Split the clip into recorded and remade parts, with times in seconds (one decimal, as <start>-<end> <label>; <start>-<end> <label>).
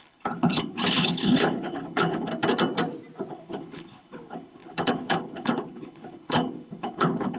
0.0-2.3 remade; 2.3-3.3 recorded; 3.3-7.4 remade